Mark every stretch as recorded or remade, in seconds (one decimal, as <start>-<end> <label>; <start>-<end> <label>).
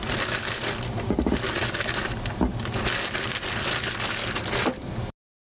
0.0-5.6 recorded